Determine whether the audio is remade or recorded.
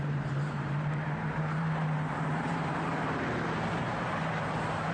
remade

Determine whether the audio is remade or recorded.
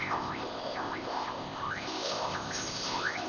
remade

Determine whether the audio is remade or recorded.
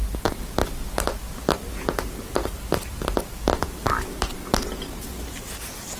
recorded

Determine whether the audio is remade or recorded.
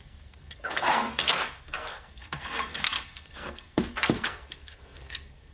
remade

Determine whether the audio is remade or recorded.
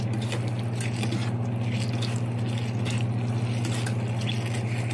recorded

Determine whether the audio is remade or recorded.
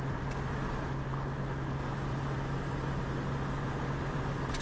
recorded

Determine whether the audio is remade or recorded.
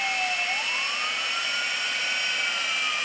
recorded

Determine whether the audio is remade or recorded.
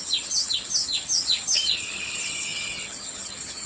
remade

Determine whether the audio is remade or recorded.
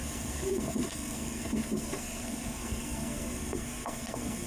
remade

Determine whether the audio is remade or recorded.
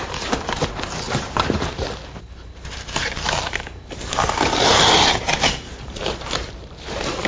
remade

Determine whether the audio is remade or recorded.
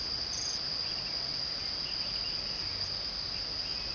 recorded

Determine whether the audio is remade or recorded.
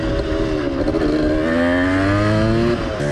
recorded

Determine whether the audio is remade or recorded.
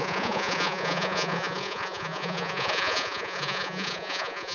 remade